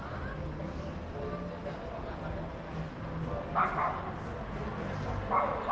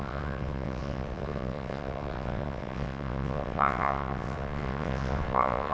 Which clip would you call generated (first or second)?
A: second